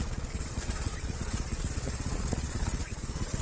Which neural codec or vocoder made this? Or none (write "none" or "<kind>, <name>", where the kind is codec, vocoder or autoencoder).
vocoder, Vocos